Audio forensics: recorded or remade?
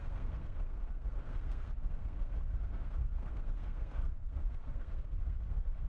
remade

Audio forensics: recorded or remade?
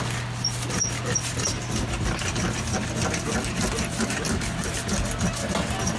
recorded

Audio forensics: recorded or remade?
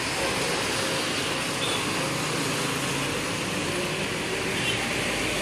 recorded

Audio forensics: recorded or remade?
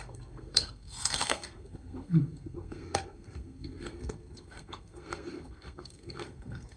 remade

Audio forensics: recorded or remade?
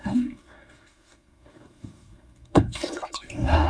remade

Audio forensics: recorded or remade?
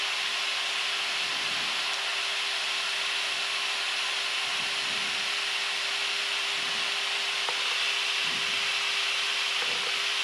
recorded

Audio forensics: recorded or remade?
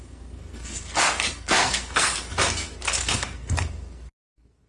remade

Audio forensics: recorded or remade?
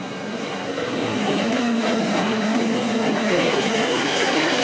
remade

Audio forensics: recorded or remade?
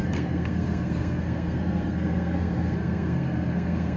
remade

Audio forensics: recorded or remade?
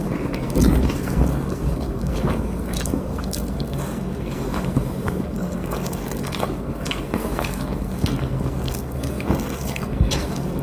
remade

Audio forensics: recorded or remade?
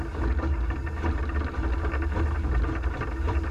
recorded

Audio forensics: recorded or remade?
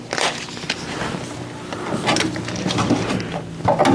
recorded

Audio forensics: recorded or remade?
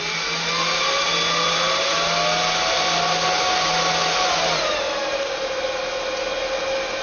recorded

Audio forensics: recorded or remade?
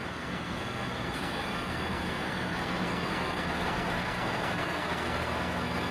remade